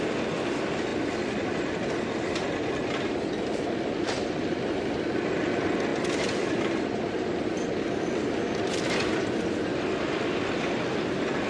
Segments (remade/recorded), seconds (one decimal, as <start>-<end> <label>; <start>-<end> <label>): 0.0-11.5 recorded